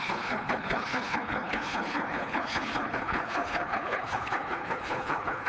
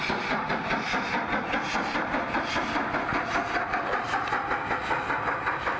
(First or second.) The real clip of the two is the second